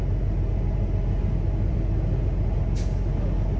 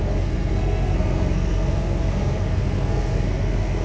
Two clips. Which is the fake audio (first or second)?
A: second